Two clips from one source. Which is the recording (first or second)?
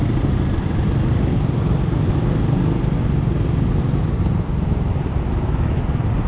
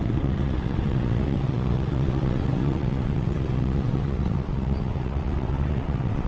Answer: first